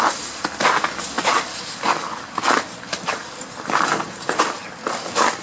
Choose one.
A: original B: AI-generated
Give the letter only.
A